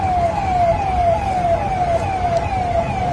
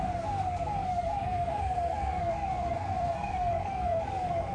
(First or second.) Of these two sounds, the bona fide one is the first